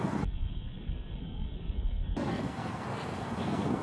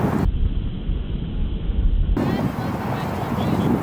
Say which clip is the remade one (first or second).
first